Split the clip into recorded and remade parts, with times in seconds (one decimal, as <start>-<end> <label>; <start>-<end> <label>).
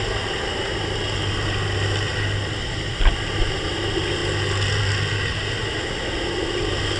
0.0-2.1 recorded; 2.1-3.4 remade; 3.4-7.0 recorded